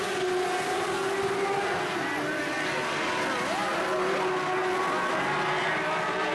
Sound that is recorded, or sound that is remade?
recorded